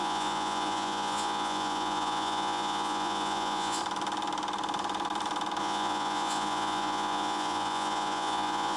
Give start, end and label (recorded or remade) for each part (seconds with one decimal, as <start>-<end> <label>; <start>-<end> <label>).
0.0-3.8 remade; 3.8-5.6 recorded; 5.6-8.8 remade